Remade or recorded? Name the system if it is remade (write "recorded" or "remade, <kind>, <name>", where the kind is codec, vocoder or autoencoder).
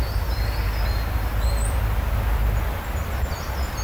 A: recorded